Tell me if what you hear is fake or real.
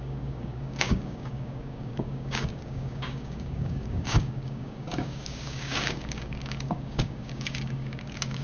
fake